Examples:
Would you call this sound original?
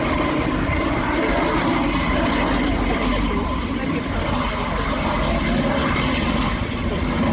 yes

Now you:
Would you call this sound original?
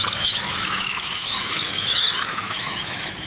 no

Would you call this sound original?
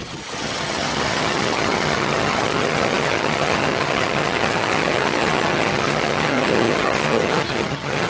no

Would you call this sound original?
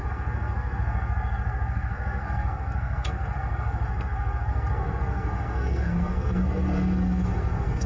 no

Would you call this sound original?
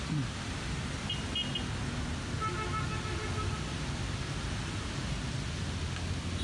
yes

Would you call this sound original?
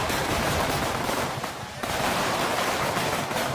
no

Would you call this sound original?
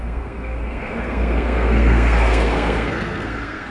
no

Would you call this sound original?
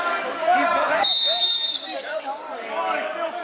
no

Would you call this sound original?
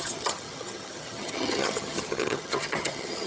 no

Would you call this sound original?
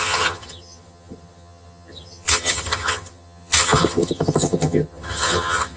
no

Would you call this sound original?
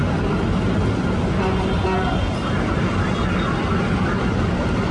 yes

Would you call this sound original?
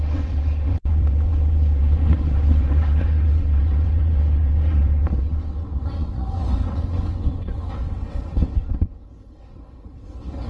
no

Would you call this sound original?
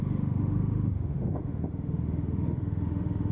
no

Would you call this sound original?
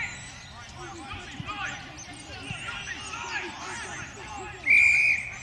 yes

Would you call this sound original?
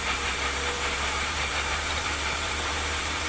no